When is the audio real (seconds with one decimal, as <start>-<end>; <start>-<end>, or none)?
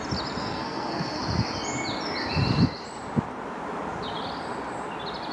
0.0-0.4; 1.2-5.3